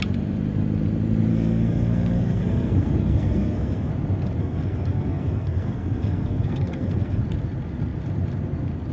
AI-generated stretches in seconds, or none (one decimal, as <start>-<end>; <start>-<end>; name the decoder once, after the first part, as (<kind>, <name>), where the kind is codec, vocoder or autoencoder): 1.3-3.9 (codec, SNAC); 4.4-7.2